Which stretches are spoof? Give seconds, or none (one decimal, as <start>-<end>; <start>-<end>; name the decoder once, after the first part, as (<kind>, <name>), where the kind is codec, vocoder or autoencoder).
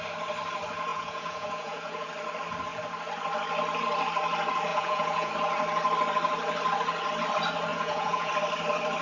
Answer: 0.9-2.1 (vocoder, Vocos); 4.7-5.3; 7.7-8.3